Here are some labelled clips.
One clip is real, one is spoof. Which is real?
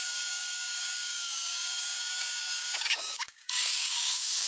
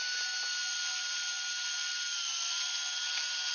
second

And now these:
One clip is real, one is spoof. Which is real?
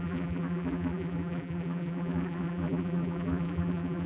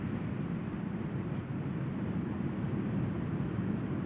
second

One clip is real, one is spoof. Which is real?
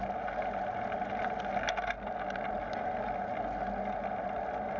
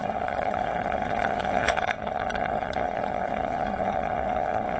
first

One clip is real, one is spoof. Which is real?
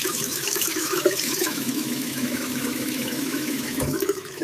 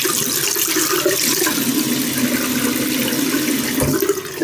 second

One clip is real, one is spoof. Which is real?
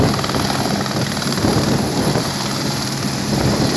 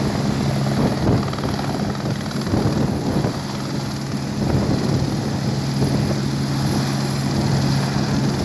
second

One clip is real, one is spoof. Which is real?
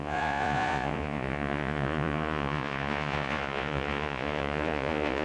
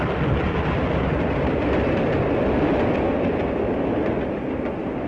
second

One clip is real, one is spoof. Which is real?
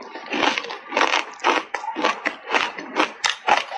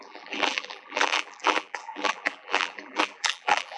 first